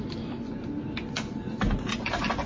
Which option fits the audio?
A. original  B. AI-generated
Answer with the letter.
A